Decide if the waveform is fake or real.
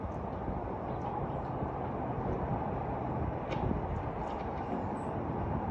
real